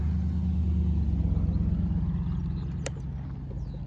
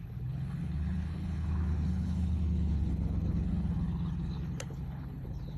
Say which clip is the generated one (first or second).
second